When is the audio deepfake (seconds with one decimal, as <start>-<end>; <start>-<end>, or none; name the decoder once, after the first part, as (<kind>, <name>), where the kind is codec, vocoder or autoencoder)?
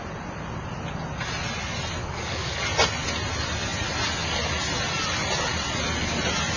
2.0-2.6 (codec, DAC)